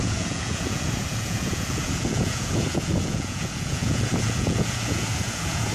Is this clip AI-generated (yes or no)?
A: yes